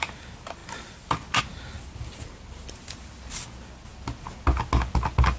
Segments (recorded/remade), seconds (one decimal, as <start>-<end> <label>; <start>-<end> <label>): 0.0-5.4 recorded